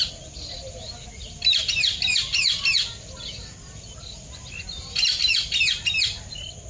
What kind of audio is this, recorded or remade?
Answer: recorded